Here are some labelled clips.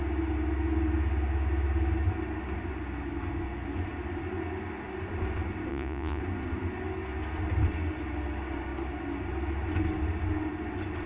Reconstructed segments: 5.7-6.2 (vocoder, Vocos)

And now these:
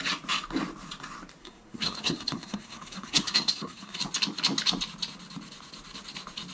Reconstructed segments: 1.4-4.0 (codec, SNAC)

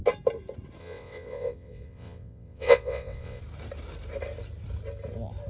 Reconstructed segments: 0.8-3.4 (vocoder, WaveNeXt)

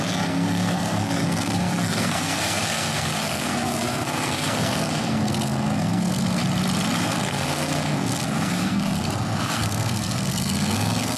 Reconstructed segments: 0.0-6.4 (codec, SNAC); 7.0-11.2

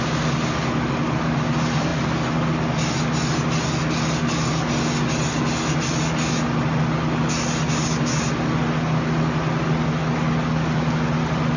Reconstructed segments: none

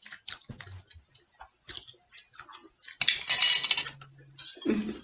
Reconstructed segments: none